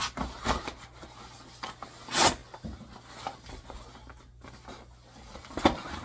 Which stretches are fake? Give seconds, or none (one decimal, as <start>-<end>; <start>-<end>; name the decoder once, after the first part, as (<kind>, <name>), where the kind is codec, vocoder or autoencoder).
none